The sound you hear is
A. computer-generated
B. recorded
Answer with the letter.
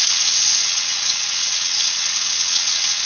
A